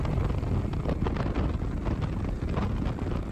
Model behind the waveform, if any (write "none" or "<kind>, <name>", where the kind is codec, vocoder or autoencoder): none